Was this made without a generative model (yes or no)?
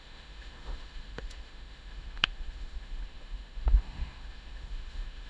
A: no